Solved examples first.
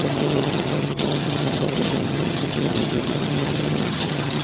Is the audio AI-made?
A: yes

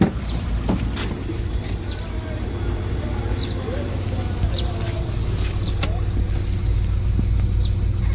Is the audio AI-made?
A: no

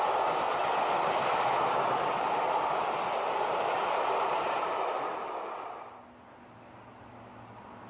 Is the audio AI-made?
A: no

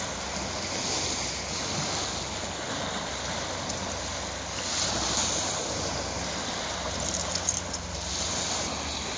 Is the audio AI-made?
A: no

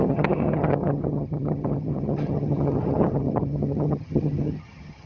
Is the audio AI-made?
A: yes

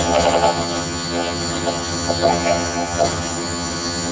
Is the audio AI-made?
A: yes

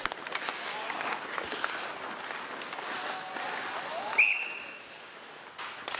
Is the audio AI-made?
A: no